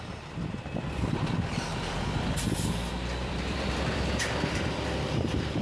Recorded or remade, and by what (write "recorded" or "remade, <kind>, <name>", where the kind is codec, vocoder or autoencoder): remade, vocoder, BigVGAN v2